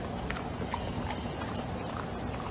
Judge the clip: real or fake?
real